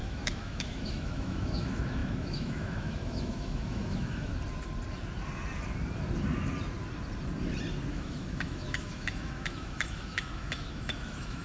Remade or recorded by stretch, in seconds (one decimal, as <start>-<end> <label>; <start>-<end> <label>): 0.0-4.3 remade; 4.3-7.9 recorded; 7.9-11.4 remade